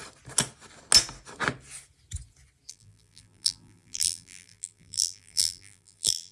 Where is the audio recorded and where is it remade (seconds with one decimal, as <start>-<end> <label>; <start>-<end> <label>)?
0.0-2.7 recorded; 2.7-6.3 remade